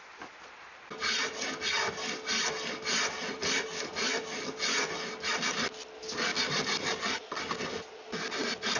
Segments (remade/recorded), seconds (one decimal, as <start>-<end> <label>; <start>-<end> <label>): 0.0-8.8 recorded